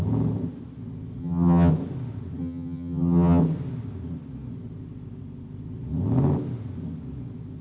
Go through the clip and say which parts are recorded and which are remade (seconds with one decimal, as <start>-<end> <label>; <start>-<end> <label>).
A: 0.0-1.2 recorded; 1.2-1.7 remade; 1.7-2.4 recorded; 2.4-3.4 remade; 3.4-7.6 recorded